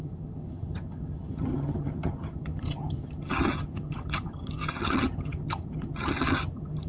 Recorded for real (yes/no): no